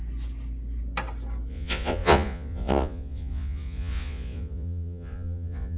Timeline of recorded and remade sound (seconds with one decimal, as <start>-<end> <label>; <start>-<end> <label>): 0.0-1.5 recorded; 1.5-5.8 remade

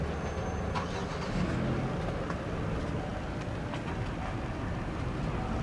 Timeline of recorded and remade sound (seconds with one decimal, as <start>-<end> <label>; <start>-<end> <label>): 0.0-5.6 recorded

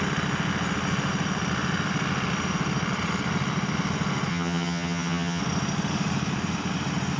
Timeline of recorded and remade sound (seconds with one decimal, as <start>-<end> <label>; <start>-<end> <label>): 0.0-4.3 recorded; 4.3-5.4 remade; 5.4-7.2 recorded